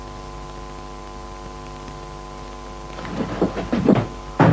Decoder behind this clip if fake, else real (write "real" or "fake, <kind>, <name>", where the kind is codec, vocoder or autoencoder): real